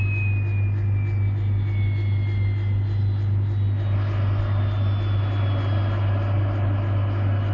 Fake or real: real